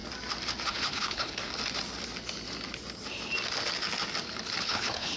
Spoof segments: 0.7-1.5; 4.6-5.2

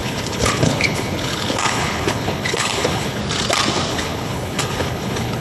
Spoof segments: 0.0-3.2; 3.9-5.4

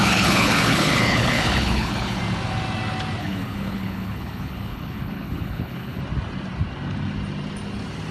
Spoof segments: 0.0-2.2; 3.2-6.0